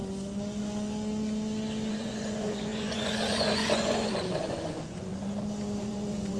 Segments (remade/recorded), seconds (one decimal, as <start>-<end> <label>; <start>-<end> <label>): 0.0-1.9 recorded; 1.9-5.1 remade; 5.1-5.8 recorded; 5.8-6.4 remade